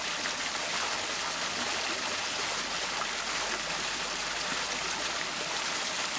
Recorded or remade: recorded